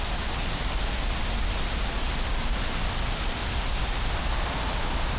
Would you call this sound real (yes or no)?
yes